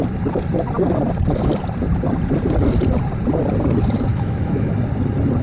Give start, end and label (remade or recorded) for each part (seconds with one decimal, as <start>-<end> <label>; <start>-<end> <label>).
0.0-4.1 recorded; 4.1-4.7 remade; 4.7-5.4 recorded